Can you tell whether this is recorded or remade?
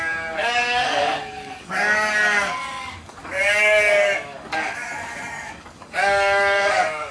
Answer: remade